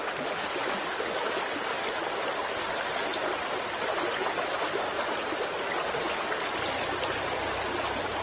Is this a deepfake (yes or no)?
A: no